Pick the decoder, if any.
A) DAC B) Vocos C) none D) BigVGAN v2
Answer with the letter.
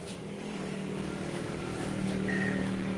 A